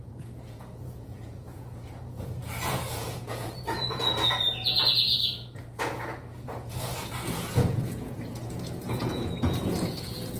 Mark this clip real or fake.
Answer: fake